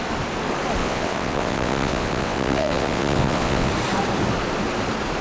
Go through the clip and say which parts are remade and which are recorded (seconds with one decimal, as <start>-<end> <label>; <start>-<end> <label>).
0.0-0.8 recorded; 0.8-3.7 remade; 3.7-5.2 recorded